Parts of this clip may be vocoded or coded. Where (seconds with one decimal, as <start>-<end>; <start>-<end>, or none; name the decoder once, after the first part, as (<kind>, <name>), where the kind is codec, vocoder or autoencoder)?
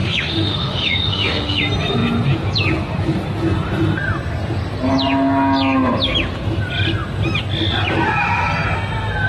0.0-1.6 (autoencoder, DAC-VAE)